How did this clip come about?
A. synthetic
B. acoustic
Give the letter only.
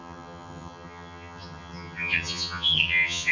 A